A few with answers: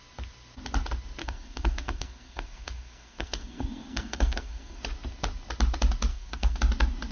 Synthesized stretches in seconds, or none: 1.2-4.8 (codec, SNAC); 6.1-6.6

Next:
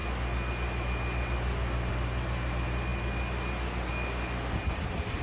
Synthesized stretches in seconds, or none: none

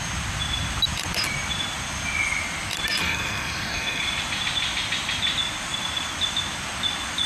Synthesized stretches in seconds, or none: 3.0-4.0 (codec, SNAC)

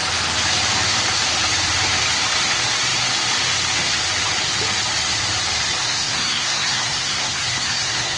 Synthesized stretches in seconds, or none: 5.8-8.2 (codec, SNAC)